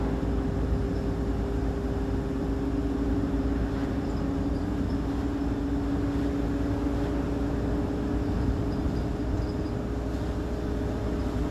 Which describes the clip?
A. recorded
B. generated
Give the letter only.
A